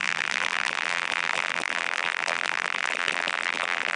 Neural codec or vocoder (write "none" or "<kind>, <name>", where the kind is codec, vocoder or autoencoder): vocoder, BigVGAN v2